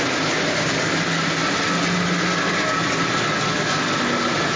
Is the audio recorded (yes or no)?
yes